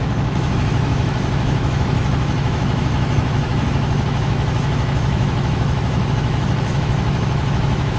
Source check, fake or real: fake